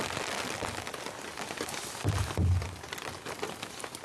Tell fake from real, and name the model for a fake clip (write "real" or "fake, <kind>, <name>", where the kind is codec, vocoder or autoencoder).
real